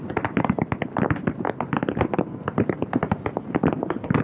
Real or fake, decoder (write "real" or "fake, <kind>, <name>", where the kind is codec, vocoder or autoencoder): real